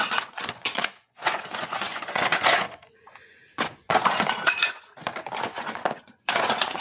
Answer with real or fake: fake